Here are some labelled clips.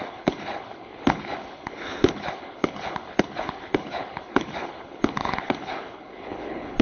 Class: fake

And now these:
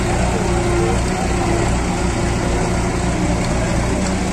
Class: real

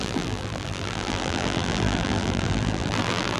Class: fake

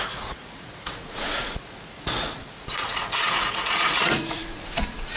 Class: fake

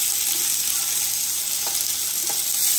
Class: real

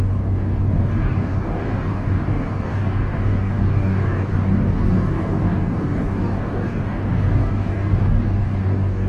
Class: fake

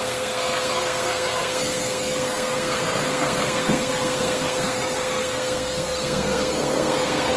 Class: fake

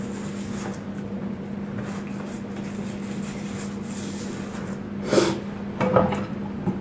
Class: real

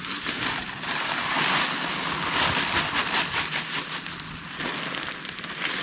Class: real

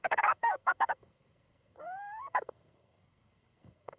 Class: fake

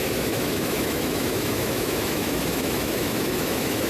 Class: fake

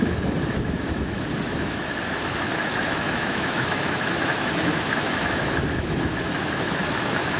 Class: fake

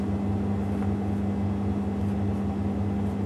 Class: real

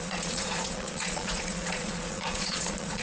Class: fake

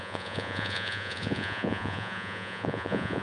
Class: fake